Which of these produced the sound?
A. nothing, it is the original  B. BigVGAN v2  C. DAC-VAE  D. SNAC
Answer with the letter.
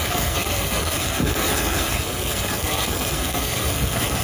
D